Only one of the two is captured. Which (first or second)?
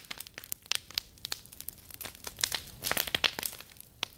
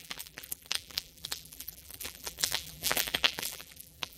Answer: first